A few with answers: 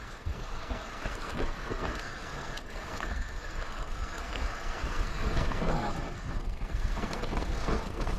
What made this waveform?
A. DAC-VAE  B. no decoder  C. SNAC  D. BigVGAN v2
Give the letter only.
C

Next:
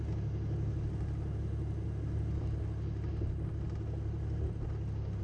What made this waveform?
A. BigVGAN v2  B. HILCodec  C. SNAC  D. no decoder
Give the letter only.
D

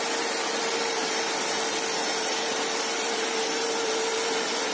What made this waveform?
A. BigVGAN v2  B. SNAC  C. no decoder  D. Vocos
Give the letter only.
A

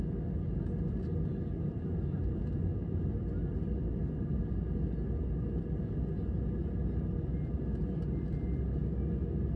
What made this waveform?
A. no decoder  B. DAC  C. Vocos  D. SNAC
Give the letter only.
A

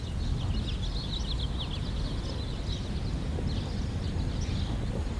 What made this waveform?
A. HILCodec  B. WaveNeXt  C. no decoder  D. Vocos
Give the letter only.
C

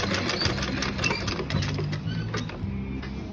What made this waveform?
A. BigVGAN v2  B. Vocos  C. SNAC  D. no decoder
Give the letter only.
D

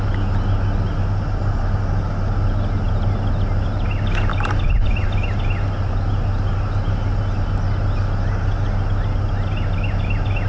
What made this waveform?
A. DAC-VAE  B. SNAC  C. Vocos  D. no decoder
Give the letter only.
D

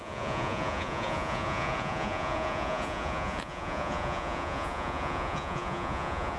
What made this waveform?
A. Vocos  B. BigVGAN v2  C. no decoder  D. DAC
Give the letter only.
A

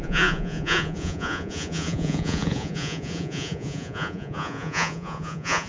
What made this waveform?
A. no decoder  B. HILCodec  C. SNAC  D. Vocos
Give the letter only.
D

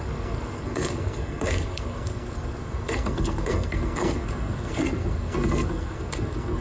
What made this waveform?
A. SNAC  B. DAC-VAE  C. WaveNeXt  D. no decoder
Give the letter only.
A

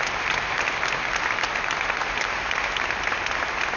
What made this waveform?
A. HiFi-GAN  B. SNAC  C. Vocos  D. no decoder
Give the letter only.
D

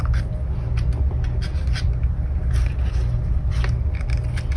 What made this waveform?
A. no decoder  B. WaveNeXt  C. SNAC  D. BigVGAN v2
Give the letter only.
A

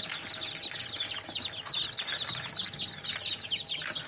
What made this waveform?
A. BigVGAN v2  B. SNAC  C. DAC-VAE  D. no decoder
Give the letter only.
D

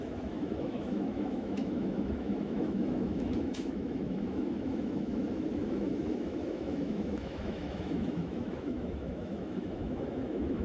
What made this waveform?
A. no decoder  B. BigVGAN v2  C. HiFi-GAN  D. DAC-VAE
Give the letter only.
D